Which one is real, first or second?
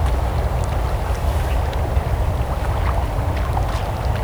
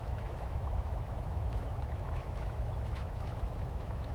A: first